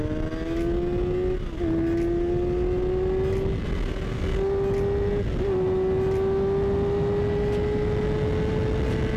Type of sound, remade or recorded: recorded